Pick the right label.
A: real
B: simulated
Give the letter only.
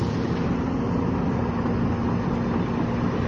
A